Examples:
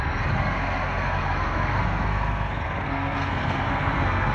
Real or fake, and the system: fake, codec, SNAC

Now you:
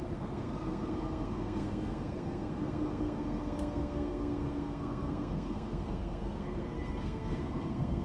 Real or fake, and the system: fake, codec, SNAC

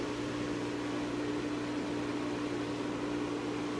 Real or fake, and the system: real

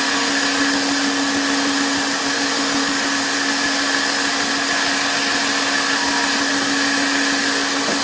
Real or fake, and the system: real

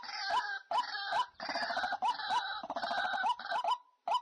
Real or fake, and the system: real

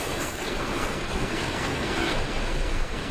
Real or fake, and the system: fake, codec, SNAC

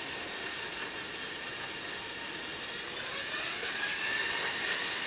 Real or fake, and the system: real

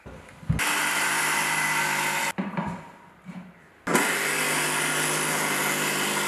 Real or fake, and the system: real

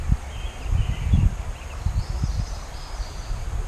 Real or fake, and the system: real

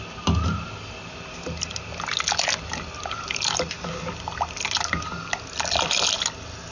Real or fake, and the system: real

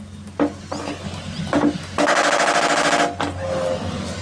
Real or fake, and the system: real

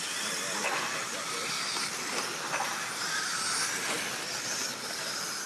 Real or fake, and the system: real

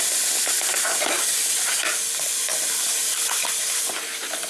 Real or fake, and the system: real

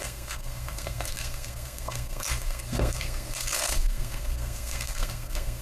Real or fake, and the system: fake, codec, SNAC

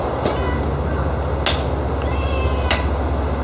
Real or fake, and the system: real